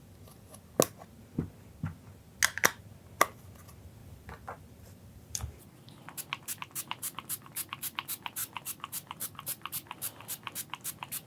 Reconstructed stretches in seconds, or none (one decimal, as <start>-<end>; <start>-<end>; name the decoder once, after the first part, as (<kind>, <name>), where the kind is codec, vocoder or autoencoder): 4.0-5.4 (vocoder, BigVGAN v2); 8.4-9.7